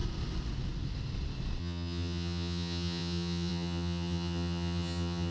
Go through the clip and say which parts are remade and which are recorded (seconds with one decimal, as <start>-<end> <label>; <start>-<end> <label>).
0.0-1.6 recorded; 1.6-5.3 remade